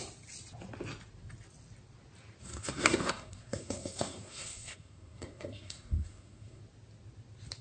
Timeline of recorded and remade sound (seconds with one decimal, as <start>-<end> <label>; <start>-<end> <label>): 0.0-2.4 recorded; 2.4-6.6 remade; 6.6-7.6 recorded